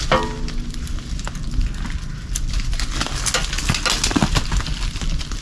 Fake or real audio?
real